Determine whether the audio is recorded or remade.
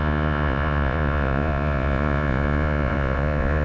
remade